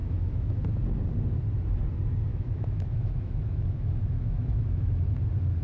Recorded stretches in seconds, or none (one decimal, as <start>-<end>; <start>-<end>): 0.6-2.3; 5.1-5.6